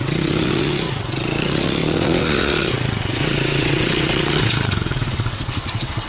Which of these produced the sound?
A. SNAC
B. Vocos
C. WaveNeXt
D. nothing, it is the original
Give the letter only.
C